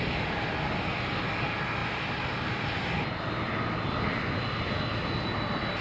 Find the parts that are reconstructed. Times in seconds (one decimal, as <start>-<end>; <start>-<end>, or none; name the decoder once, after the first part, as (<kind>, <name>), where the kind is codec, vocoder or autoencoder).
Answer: none